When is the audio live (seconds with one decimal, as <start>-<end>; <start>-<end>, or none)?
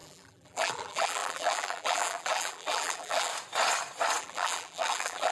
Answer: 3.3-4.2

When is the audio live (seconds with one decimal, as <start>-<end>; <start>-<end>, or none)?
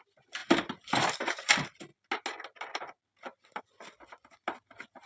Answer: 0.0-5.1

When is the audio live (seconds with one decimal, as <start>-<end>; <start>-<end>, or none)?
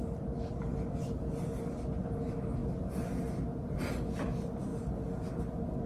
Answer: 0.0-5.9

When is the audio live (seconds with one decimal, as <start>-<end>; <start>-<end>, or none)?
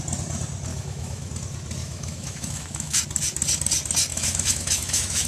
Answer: 0.0-0.7; 1.3-1.8; 3.0-4.1